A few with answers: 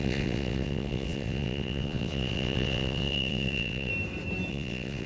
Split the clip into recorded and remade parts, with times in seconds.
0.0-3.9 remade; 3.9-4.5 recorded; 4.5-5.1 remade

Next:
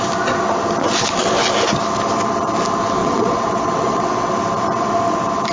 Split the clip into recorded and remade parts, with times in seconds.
0.0-3.0 recorded; 3.0-4.3 remade; 4.3-5.5 recorded